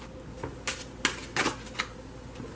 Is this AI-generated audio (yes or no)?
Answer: no